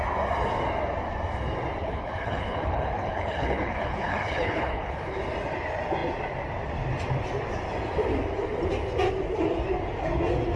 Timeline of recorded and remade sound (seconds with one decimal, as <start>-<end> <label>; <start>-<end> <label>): 0.0-1.8 recorded; 1.8-5.2 remade; 5.2-10.6 recorded